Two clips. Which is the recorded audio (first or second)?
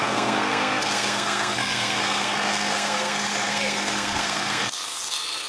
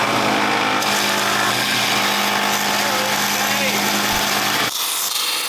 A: second